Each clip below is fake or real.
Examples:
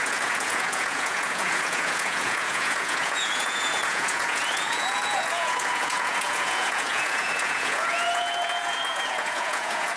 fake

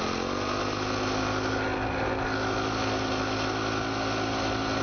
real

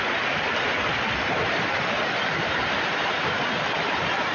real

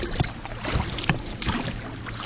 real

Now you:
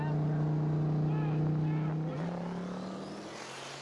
real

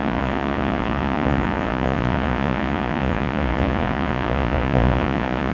fake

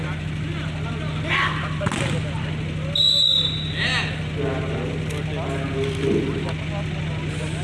real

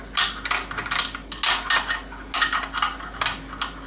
real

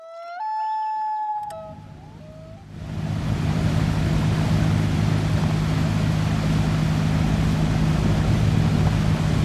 real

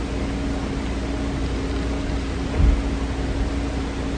real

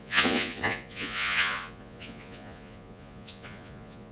fake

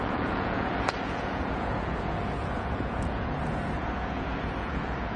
fake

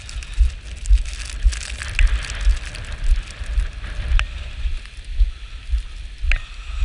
real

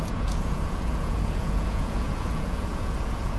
fake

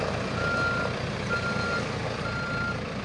real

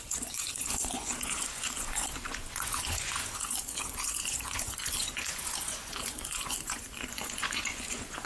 fake